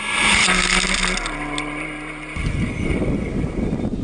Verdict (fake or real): real